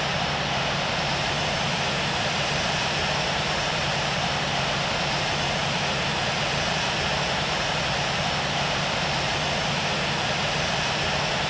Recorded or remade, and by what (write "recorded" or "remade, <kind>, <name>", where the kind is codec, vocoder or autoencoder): remade, vocoder, BigVGAN v2